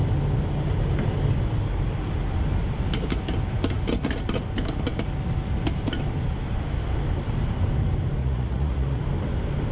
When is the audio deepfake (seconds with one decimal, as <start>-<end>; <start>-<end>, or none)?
8.2-9.0